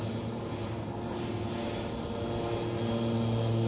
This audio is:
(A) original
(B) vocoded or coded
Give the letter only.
A